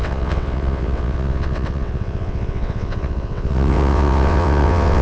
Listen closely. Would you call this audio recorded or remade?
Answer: remade